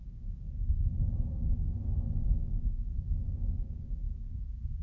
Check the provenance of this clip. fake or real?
fake